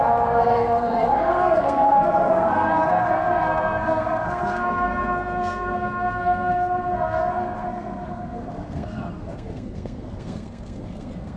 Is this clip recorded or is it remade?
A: remade